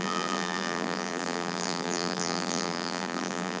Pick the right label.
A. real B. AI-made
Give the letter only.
B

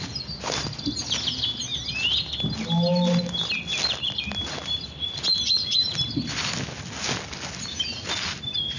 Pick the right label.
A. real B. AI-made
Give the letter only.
A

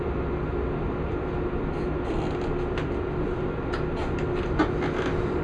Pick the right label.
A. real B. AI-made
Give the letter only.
A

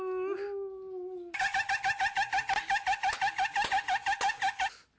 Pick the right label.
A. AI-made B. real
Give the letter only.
B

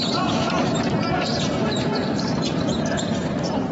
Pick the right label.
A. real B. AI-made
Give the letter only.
B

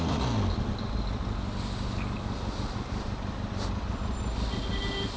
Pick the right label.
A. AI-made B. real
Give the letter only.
B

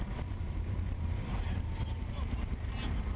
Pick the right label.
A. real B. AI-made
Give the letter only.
B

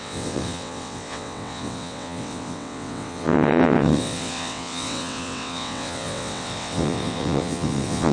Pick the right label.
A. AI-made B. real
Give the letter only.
A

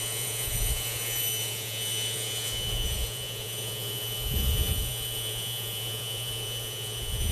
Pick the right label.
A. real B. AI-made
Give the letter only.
B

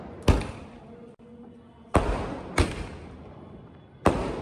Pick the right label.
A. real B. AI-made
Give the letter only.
A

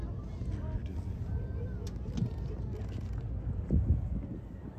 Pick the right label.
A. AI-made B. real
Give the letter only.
B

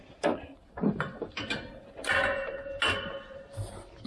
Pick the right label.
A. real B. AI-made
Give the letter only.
A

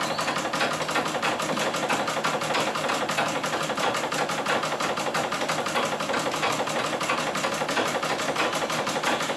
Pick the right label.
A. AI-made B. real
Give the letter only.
B